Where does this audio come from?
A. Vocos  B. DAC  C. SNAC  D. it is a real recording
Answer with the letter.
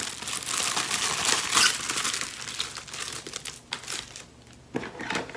D